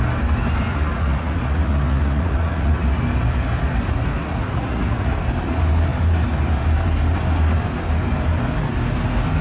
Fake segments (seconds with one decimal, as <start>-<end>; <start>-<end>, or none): 0.7-3.0; 4.2-5.1